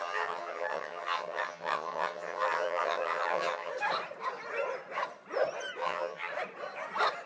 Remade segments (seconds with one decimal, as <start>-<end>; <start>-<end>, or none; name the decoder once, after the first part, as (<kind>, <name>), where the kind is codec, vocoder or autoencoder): 0.0-3.7 (vocoder, HiFi-GAN); 5.8-6.3